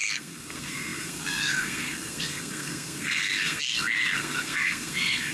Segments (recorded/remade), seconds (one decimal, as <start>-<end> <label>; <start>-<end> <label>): 0.0-5.3 remade